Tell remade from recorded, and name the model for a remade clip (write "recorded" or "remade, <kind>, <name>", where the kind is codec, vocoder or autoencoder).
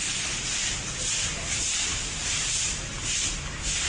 recorded